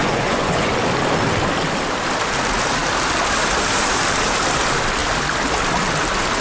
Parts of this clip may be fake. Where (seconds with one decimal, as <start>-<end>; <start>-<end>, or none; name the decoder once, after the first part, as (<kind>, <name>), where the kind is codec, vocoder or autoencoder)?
0.0-0.7 (vocoder, Vocos)

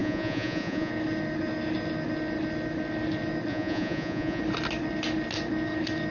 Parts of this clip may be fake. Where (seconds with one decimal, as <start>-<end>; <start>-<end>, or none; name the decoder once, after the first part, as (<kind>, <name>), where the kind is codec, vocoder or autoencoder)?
0.0-0.9 (vocoder, Vocos); 3.5-4.4

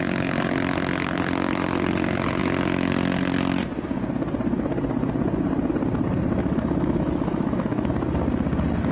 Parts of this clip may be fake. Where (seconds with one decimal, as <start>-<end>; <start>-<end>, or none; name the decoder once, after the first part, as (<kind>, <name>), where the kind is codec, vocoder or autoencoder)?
6.4-7.9 (autoencoder, DAC-VAE)

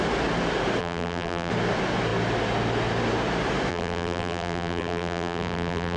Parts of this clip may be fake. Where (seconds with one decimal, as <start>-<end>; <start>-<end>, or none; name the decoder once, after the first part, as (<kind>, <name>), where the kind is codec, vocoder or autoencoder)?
0.8-1.5 (vocoder, BigVGAN v2); 3.7-6.0

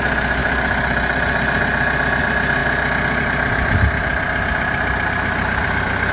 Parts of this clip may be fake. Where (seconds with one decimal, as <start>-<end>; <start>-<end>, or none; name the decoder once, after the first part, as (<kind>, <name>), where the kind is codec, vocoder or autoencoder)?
none

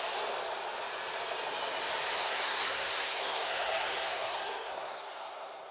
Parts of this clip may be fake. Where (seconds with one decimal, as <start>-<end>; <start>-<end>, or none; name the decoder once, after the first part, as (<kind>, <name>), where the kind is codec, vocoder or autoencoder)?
2.2-5.7 (codec, SNAC)

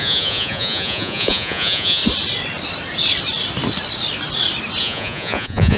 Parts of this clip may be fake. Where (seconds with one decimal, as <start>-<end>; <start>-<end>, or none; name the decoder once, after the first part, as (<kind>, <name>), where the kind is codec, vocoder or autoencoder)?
0.0-2.0 (vocoder, Vocos); 4.8-5.8

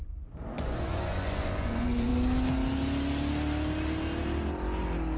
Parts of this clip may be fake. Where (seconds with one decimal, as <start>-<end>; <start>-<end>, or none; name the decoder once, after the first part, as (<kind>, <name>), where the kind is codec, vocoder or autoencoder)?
0.0-2.1 (vocoder, Vocos)